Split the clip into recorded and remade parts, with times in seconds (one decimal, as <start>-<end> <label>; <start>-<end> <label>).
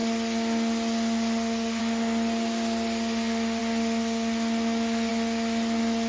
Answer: 0.0-6.1 recorded